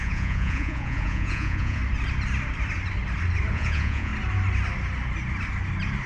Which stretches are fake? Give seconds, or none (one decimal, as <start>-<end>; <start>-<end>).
0.0-1.8; 3.5-4.1